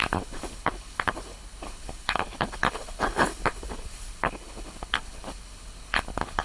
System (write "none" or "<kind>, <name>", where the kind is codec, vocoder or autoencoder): codec, HILCodec